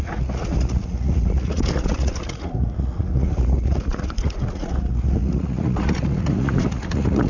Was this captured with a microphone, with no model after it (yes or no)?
no